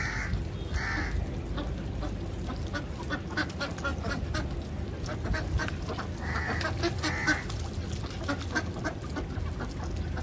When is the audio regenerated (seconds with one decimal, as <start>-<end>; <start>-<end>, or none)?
none